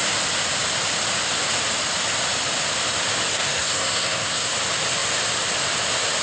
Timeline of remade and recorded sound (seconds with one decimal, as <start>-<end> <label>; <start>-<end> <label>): 0.0-3.3 recorded; 3.3-4.5 remade; 4.5-6.2 recorded